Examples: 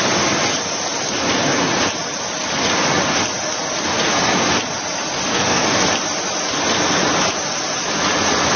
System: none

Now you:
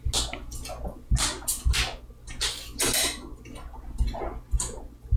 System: none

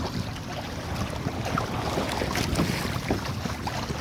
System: none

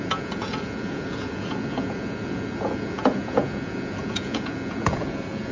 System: vocoder, Vocos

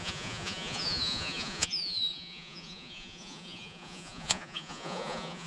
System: vocoder, Vocos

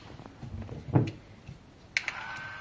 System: none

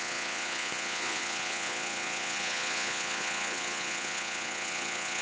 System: vocoder, Vocos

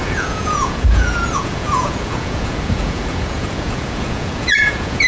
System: vocoder, Vocos